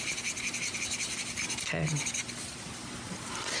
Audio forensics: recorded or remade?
recorded